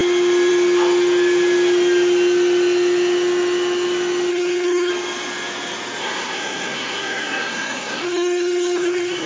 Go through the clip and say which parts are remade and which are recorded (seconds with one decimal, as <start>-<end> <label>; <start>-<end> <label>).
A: 0.0-4.3 recorded; 4.3-4.9 remade; 4.9-6.0 recorded; 6.0-9.3 remade